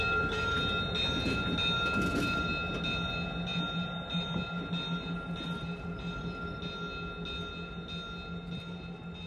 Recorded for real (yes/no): yes